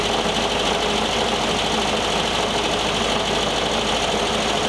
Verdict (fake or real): real